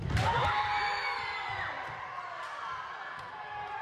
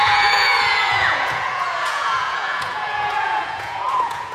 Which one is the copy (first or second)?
second